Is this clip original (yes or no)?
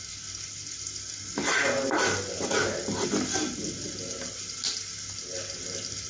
yes